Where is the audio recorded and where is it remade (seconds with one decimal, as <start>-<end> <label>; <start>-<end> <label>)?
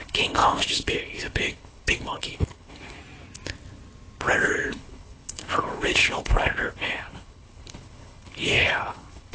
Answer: 0.0-3.0 remade; 3.0-4.4 recorded; 4.4-9.3 remade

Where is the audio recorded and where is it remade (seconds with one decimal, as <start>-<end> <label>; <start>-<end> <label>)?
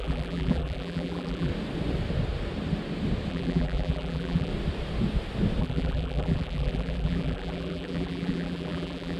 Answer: 0.0-1.5 remade; 1.5-3.3 recorded; 3.3-4.5 remade; 4.5-5.6 recorded; 5.6-9.2 remade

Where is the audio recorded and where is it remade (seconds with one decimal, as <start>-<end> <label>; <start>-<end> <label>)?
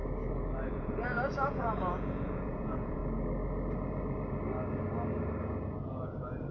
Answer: 0.0-0.7 recorded; 0.7-3.0 remade; 3.0-5.4 recorded; 5.4-6.5 remade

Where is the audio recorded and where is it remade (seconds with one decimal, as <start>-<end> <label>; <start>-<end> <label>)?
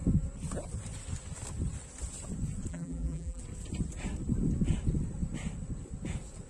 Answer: 0.0-2.7 recorded; 2.7-3.4 remade; 3.4-6.5 recorded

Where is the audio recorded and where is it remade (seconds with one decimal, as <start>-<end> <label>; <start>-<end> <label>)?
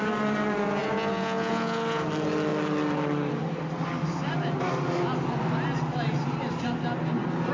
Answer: 0.0-7.5 recorded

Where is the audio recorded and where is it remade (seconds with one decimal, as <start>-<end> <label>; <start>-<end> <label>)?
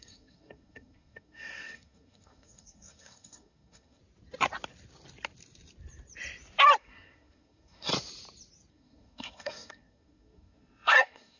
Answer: 0.0-4.0 remade; 4.0-6.8 recorded; 6.8-7.9 remade; 7.9-8.7 recorded; 8.7-11.4 remade